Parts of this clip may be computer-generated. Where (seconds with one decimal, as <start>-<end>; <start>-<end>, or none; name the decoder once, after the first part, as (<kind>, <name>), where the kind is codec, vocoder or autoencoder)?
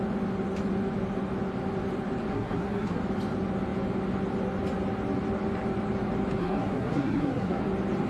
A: 2.3-3.0 (codec, SNAC); 6.4-7.6